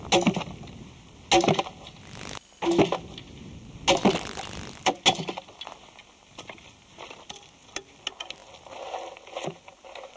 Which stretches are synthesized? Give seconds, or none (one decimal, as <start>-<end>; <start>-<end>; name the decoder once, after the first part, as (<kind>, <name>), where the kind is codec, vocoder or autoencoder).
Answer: none